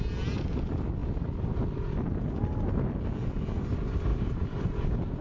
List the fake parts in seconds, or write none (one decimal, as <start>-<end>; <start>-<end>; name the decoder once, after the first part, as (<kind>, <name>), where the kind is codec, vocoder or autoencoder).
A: 4.1-5.2 (vocoder, BigVGAN v2)